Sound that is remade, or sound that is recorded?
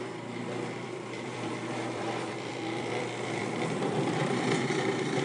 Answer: remade